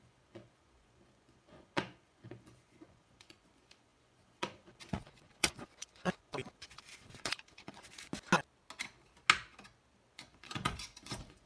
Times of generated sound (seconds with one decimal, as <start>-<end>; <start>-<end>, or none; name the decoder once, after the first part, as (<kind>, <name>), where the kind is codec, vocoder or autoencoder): 0.0-8.1 (vocoder, Vocos); 10.1-11.5